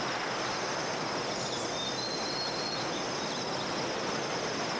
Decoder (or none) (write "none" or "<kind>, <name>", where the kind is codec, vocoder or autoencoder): none